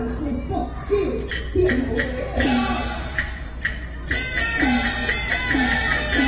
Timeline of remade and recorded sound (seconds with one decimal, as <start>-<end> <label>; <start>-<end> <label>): 0.0-2.8 recorded; 2.8-3.5 remade; 3.5-6.3 recorded